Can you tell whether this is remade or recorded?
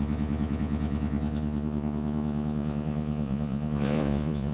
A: remade